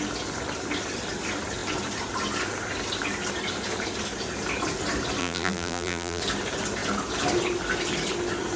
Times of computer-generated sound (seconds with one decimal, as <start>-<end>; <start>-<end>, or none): 5.2-6.2